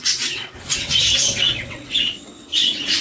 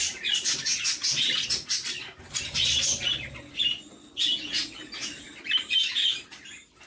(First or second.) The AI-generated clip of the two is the first